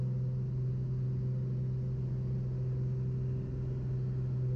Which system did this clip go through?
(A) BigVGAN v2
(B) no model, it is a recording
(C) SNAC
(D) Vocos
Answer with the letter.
B